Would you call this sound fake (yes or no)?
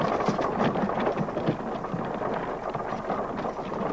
no